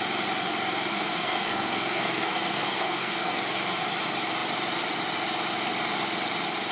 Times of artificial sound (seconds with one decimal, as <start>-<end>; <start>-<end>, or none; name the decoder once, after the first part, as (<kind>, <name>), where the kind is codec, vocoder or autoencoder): 0.9-3.4 (codec, SNAC)